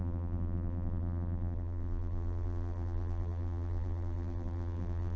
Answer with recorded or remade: remade